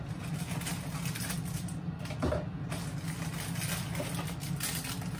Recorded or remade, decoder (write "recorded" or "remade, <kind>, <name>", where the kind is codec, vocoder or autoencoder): recorded